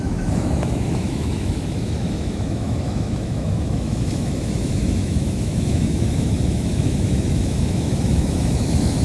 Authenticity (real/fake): fake